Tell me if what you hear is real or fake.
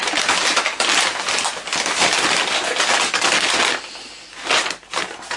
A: real